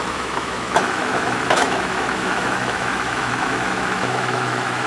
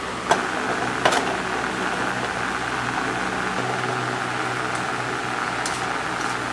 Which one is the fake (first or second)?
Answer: first